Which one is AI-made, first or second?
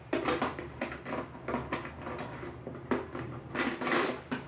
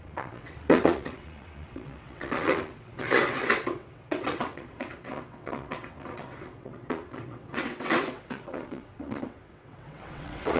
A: second